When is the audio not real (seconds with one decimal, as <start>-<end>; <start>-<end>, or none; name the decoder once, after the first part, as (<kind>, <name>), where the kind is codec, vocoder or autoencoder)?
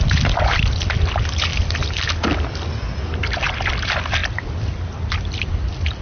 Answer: none